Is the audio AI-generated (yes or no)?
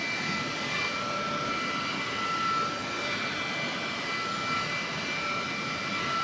no